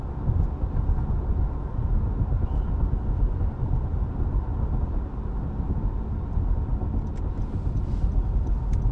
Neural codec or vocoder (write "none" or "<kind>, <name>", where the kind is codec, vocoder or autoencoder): none